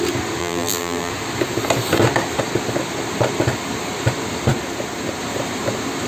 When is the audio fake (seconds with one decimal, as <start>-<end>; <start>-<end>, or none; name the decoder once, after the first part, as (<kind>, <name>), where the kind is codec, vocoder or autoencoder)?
0.4-1.1 (vocoder, BigVGAN v2)